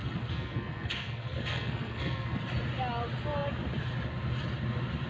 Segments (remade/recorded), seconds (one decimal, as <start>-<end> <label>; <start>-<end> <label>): 0.0-2.4 remade; 2.4-5.1 recorded